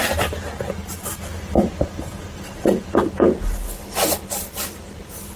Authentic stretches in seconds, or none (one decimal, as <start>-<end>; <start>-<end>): 0.0-5.4